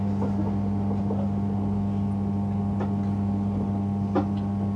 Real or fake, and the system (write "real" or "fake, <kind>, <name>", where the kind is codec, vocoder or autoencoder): real